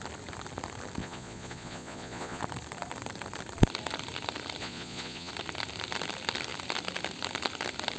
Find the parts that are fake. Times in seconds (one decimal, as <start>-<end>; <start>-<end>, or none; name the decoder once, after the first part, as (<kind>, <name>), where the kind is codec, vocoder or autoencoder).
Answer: 1.0-2.4 (vocoder, Vocos); 4.6-5.3